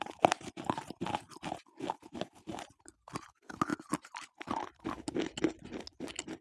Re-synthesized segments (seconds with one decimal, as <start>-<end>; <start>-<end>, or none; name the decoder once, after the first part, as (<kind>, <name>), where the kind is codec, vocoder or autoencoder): none